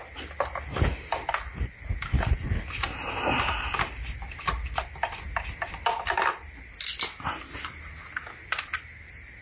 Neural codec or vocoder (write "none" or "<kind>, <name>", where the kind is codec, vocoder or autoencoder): none